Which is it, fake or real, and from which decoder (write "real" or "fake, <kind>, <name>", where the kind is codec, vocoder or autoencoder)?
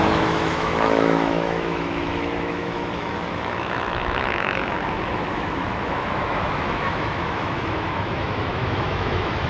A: fake, autoencoder, DAC-VAE